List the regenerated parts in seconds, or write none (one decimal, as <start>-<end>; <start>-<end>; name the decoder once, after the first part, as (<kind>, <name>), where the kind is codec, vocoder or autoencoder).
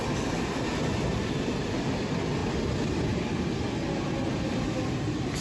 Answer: none